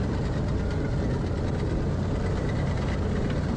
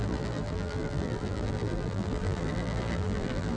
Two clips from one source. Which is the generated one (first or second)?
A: second